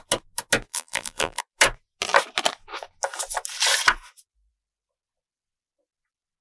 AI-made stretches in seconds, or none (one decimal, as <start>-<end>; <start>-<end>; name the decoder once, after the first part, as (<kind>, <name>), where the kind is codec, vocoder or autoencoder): 0.7-1.4 (vocoder, BigVGAN v2)